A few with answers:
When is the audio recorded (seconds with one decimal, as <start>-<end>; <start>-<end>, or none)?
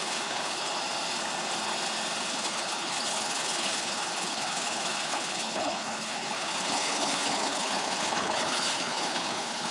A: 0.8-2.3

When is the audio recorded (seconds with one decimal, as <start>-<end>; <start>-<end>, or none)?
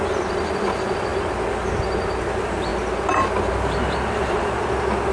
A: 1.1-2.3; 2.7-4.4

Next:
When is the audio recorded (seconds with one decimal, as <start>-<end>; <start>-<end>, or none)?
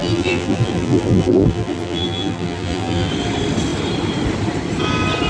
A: 3.1-5.3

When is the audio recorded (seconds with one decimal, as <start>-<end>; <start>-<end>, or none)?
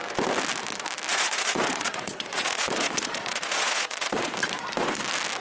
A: 0.0-1.1; 4.3-5.4